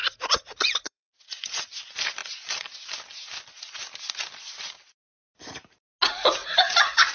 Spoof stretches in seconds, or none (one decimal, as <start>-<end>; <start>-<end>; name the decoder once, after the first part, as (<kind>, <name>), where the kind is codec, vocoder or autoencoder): 0.0-1.6 (vocoder, Vocos); 6.4-7.1